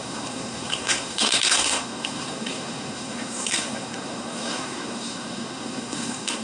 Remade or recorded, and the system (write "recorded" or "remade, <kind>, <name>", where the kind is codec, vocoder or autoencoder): remade, codec, SNAC